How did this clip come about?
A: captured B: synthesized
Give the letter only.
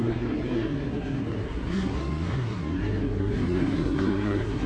B